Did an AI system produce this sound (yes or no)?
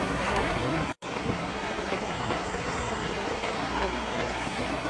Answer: yes